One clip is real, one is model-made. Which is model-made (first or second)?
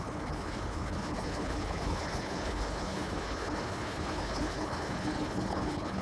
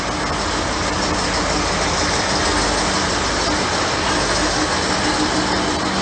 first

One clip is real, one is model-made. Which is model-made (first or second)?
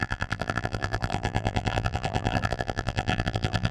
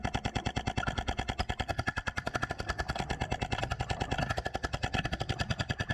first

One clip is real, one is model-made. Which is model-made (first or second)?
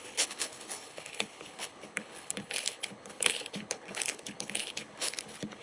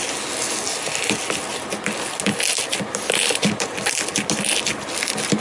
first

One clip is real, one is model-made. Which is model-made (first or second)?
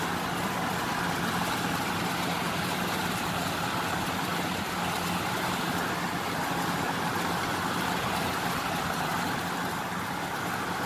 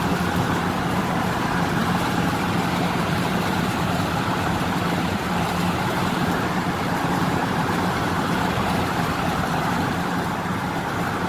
second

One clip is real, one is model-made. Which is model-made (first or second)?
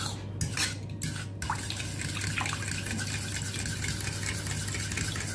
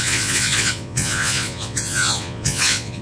second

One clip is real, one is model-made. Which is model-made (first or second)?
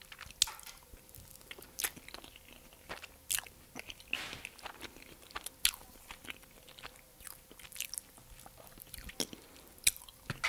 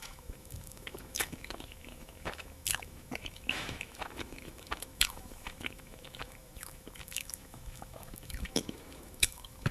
second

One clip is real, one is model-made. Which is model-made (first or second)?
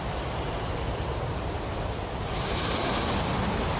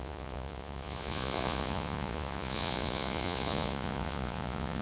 second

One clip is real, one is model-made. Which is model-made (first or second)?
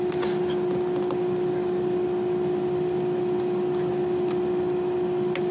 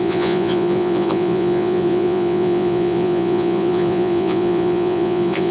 second